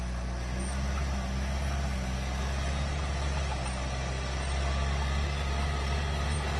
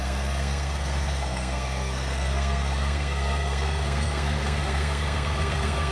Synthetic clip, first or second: second